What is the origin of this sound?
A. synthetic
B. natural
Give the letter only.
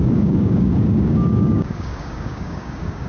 A